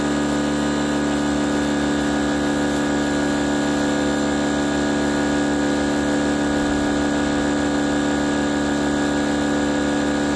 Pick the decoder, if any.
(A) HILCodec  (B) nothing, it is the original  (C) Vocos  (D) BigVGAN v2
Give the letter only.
B